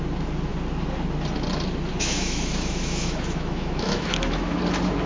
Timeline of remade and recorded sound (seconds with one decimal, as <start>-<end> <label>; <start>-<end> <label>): 0.0-1.9 recorded; 1.9-4.6 remade; 4.6-5.1 recorded